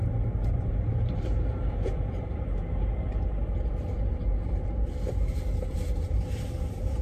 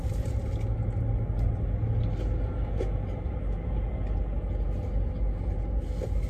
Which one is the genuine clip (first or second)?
second